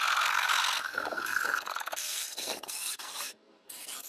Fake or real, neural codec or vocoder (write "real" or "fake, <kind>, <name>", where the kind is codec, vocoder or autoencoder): fake, codec, SNAC